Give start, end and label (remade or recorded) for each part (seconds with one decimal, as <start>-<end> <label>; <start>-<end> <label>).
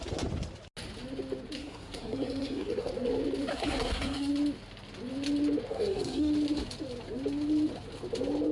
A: 0.0-1.6 recorded; 1.6-2.9 remade; 2.9-3.5 recorded; 3.5-4.3 remade; 4.3-5.7 recorded; 5.7-6.3 remade; 6.3-8.5 recorded